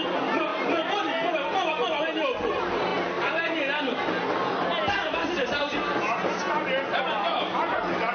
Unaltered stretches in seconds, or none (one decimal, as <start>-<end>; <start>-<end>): 0.0-8.1